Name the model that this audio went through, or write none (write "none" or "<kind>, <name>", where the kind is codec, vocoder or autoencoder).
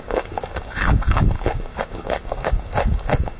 codec, DAC